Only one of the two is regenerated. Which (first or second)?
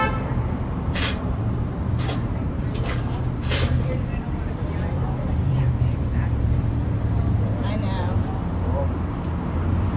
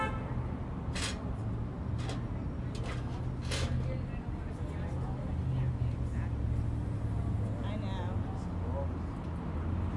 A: first